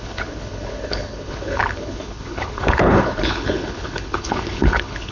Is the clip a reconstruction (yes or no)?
yes